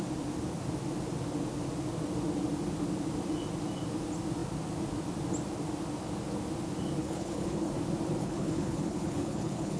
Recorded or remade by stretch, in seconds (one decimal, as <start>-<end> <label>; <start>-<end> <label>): 0.0-7.0 recorded; 7.0-7.7 remade; 7.7-8.2 recorded; 8.2-9.8 remade